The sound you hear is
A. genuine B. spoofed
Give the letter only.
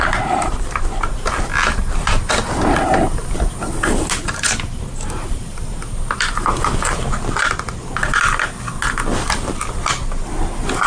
A